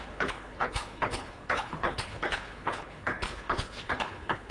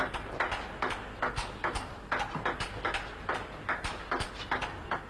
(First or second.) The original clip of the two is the second